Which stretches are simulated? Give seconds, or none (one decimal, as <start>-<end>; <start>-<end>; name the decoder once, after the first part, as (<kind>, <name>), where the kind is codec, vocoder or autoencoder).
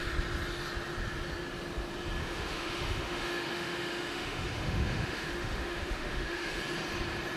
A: 2.2-6.6 (autoencoder, DAC-VAE)